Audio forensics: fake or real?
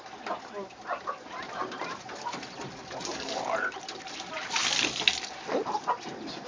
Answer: real